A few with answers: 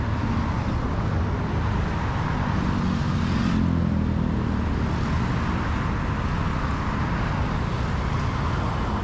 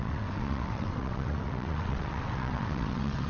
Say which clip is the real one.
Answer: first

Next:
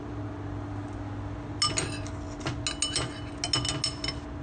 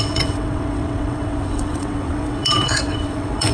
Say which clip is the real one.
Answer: first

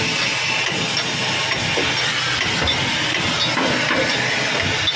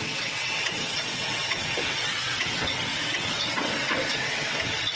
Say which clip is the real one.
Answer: first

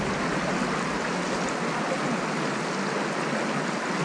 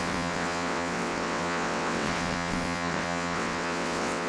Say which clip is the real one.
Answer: first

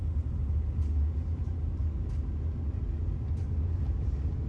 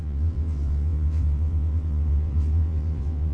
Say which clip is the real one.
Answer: first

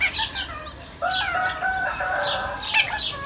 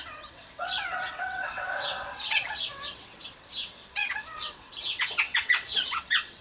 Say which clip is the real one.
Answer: first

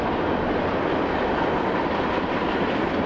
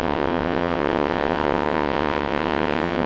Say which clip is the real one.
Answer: first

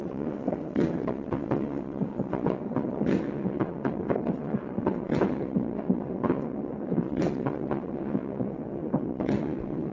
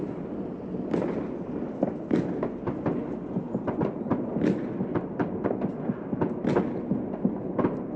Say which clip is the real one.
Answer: second